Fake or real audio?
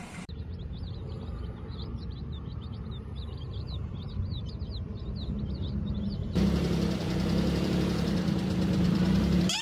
fake